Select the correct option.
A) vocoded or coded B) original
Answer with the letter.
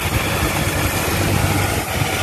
B